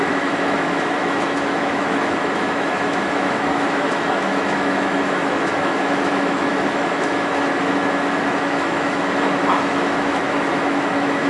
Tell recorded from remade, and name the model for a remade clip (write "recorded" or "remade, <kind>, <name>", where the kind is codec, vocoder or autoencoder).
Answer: remade, autoencoder, DAC-VAE